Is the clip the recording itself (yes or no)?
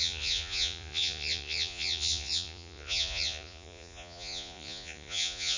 no